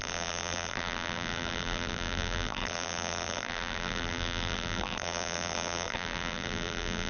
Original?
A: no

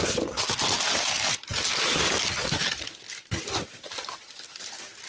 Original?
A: yes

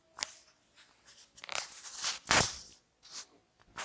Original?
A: yes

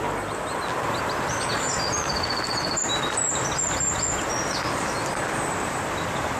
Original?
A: yes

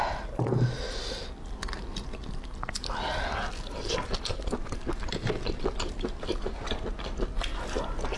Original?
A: yes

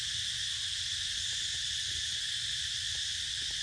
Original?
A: yes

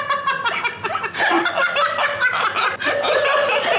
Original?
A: yes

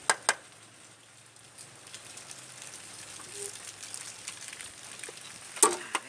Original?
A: yes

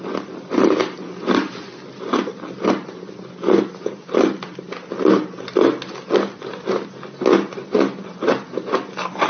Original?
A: yes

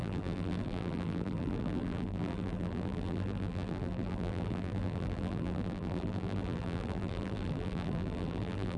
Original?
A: no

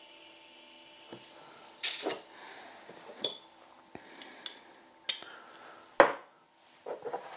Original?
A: yes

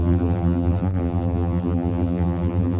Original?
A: no